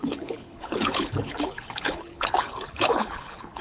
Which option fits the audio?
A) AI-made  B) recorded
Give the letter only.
A